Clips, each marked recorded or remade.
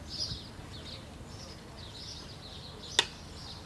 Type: recorded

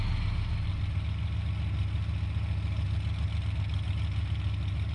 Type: recorded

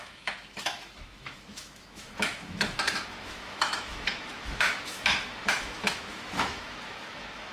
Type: remade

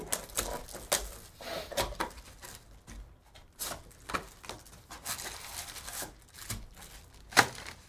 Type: recorded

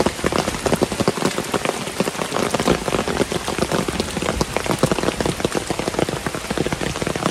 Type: recorded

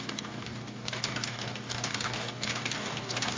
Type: remade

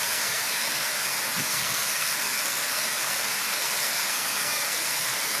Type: remade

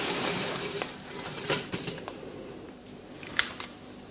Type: remade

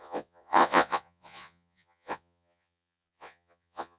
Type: remade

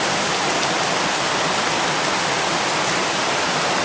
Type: recorded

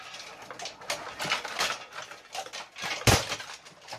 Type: recorded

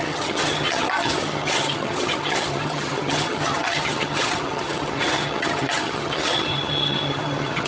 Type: remade